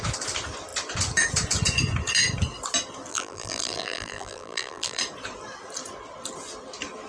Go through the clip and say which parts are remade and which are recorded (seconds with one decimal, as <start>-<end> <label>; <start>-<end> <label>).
0.0-3.1 recorded; 3.1-5.0 remade; 5.0-7.1 recorded